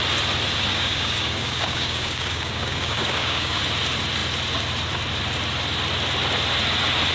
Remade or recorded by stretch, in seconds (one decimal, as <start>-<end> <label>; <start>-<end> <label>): 0.0-0.7 recorded; 0.7-3.6 remade; 3.6-7.1 recorded